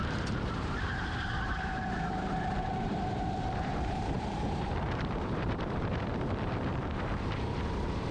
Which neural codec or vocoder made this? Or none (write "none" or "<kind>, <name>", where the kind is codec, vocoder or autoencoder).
vocoder, BigVGAN v2